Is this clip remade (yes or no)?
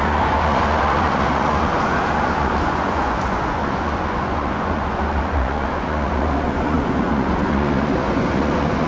yes